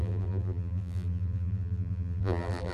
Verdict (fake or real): fake